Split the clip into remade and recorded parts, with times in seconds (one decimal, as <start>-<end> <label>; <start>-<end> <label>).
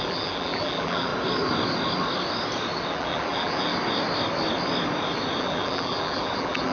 0.0-1.1 remade; 1.1-2.9 recorded; 2.9-3.7 remade; 3.7-5.4 recorded; 5.4-6.7 remade